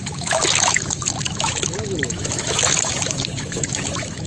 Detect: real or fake fake